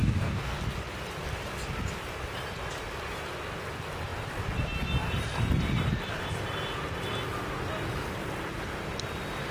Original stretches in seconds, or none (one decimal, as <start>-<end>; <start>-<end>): 0.6-9.5

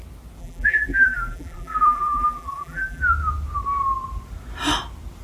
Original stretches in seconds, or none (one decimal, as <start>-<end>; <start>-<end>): 0.0-0.4; 3.0-5.2

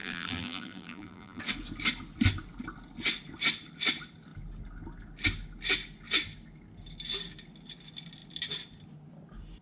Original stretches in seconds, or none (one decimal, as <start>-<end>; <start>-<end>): 1.4-9.6